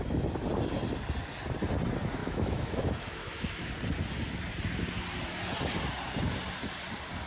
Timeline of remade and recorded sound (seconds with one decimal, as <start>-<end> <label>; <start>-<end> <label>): 0.0-2.2 recorded; 2.2-3.7 remade; 3.7-7.3 recorded

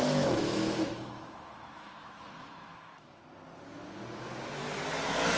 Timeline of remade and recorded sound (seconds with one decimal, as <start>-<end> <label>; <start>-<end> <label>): 0.0-3.2 remade; 3.2-5.4 recorded

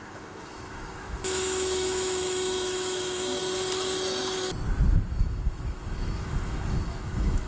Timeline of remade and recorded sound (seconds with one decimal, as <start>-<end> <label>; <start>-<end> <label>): 0.0-3.4 remade; 3.4-5.1 recorded; 5.1-7.5 remade